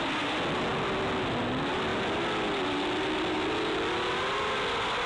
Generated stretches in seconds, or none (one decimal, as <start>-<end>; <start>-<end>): none

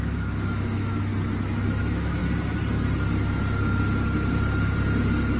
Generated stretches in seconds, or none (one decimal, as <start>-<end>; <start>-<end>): 0.0-1.1; 1.8-2.2

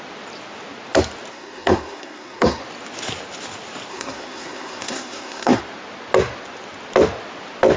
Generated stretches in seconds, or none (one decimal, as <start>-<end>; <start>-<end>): 1.3-2.6; 3.9-5.6

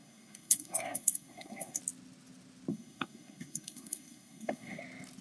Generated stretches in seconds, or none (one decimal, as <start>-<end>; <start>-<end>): 0.0-1.8; 2.7-4.8